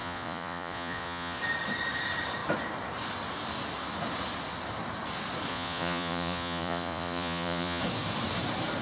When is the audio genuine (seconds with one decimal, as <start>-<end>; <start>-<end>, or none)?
1.4-5.5; 7.8-8.8